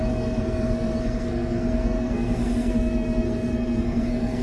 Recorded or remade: remade